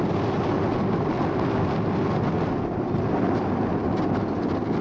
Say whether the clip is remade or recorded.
recorded